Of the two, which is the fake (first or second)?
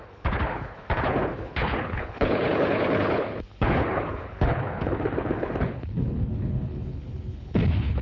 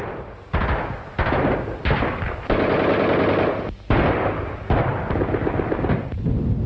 first